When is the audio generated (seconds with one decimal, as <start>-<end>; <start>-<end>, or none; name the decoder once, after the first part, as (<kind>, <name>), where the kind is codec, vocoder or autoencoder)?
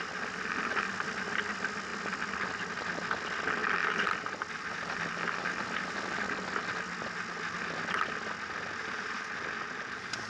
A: none